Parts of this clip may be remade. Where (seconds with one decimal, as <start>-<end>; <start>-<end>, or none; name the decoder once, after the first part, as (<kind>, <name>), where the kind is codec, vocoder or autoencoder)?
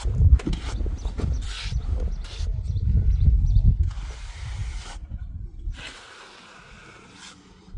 none